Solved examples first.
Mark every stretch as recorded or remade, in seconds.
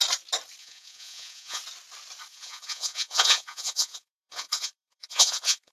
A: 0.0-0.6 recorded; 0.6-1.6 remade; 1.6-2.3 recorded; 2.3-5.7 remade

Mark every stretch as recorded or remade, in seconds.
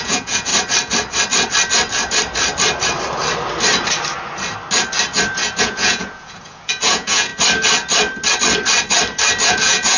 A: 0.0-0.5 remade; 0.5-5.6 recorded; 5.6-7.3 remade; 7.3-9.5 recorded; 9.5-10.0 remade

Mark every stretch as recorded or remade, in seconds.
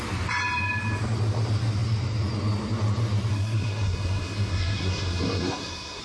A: 0.0-3.3 recorded; 3.3-6.0 remade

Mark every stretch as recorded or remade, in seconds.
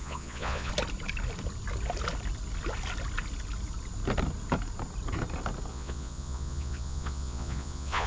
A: 0.0-0.7 remade; 0.7-5.7 recorded; 5.7-8.1 remade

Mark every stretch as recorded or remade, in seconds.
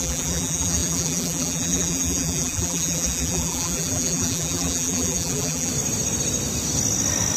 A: 0.0-5.7 remade; 5.7-7.4 recorded